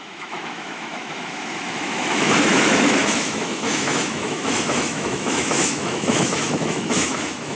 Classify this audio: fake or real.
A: fake